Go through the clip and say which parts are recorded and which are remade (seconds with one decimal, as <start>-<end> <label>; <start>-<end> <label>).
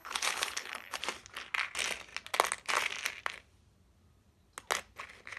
0.0-1.0 remade; 1.0-5.4 recorded